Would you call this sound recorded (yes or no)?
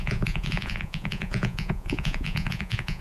no